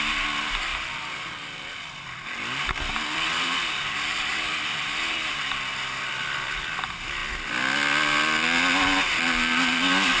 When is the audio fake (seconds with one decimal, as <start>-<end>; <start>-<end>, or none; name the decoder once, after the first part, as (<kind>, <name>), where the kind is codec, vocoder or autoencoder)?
0.7-5.7 (vocoder, BigVGAN v2)